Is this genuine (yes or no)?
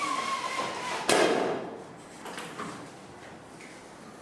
yes